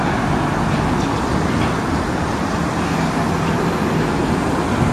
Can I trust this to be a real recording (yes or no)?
no